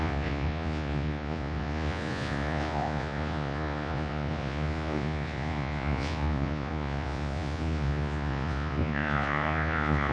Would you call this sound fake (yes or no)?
yes